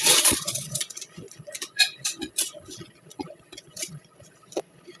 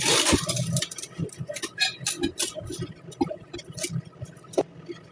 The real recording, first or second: second